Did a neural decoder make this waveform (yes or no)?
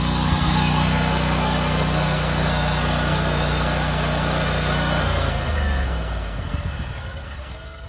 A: yes